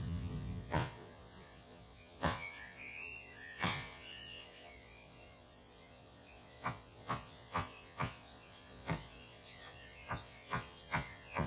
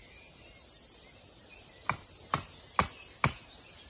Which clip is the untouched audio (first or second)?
second